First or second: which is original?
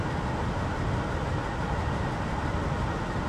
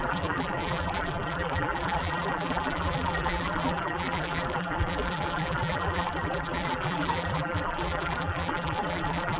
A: first